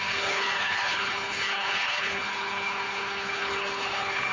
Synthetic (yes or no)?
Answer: yes